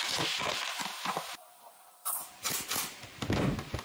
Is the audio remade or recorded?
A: recorded